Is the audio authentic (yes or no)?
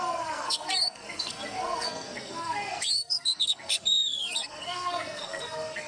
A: no